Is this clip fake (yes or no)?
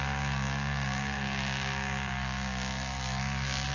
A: no